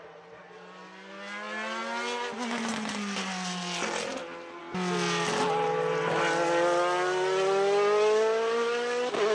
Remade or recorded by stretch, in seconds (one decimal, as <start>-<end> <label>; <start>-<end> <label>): 0.0-9.3 recorded